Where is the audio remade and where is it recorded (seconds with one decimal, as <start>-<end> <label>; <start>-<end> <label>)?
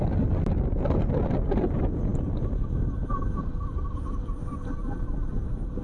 0.0-5.8 recorded